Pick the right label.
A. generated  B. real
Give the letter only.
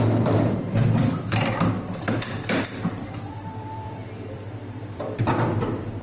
A